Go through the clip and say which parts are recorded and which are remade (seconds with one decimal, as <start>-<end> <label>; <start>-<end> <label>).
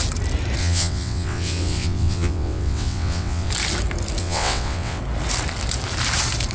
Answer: 0.0-0.6 recorded; 0.6-3.5 remade; 3.5-4.2 recorded; 4.2-5.0 remade; 5.0-6.5 recorded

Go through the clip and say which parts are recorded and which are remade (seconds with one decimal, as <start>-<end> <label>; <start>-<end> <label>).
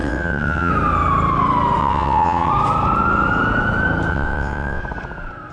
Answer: 0.0-0.7 remade; 0.7-1.8 recorded; 1.8-2.5 remade; 2.5-4.1 recorded; 4.1-4.8 remade; 4.8-5.5 recorded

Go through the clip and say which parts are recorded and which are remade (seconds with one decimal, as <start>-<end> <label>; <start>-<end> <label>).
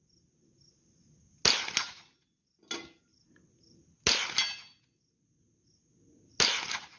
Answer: 0.0-7.0 recorded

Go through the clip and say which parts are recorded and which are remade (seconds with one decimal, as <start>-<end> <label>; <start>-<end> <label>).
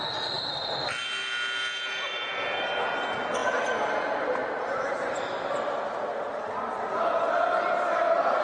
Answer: 0.0-8.4 recorded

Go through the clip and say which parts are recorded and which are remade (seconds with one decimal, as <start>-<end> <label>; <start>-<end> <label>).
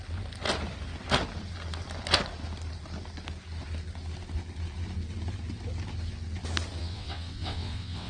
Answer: 0.0-6.8 recorded; 6.8-8.1 remade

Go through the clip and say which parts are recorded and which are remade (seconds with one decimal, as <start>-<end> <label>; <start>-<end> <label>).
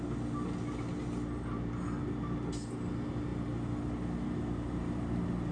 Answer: 0.0-5.5 recorded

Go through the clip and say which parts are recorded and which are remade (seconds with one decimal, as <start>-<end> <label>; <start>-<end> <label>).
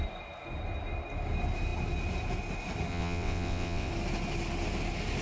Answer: 0.0-2.9 recorded; 2.9-3.9 remade; 3.9-5.2 recorded